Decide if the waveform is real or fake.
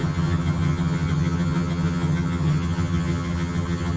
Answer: fake